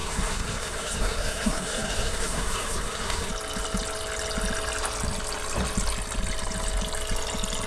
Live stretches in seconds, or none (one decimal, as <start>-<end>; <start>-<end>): 3.3-7.7